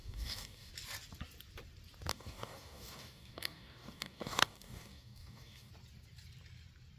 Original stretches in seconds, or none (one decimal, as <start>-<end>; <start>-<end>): 0.7-2.1; 5.7-7.0